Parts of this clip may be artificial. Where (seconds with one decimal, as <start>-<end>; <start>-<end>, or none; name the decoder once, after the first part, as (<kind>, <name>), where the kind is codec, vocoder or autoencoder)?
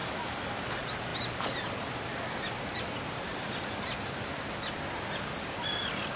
none